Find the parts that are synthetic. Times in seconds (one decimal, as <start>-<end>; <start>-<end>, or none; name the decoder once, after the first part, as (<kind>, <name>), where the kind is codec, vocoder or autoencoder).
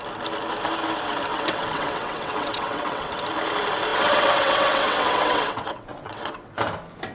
1.3-3.1 (vocoder, WaveNeXt); 3.9-6.5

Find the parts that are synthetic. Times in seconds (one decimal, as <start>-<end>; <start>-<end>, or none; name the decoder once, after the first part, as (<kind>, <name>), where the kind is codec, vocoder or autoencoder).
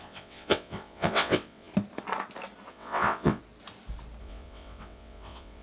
0.0-1.7 (vocoder, WaveNeXt); 2.7-3.4; 4.2-5.6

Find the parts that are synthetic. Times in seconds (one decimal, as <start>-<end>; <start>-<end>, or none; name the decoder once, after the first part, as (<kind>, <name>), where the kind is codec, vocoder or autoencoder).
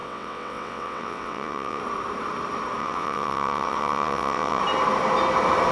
0.0-1.8 (vocoder, WaveNeXt); 2.8-4.6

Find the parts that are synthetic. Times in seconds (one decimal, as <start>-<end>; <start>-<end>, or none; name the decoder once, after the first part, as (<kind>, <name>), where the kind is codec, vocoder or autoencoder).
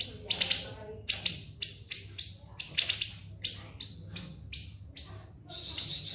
none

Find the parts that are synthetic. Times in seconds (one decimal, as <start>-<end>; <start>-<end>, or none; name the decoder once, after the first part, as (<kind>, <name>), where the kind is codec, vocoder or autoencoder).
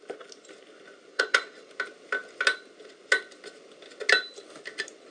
1.1-1.7 (vocoder, WaveNeXt)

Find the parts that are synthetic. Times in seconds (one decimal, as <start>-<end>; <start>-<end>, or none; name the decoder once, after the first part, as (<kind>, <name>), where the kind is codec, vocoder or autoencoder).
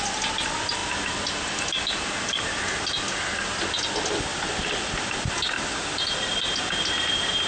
none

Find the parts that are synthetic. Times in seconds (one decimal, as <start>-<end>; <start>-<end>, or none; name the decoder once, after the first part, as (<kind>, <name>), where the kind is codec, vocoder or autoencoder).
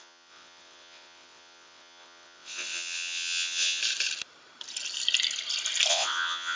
0.0-3.8 (vocoder, WaveNeXt); 5.9-6.6